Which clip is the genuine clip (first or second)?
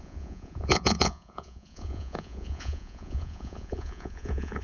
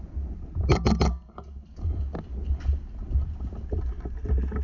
second